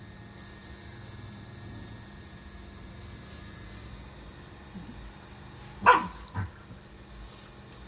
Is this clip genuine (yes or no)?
yes